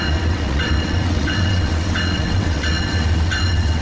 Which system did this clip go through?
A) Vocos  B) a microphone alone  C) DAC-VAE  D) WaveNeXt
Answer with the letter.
D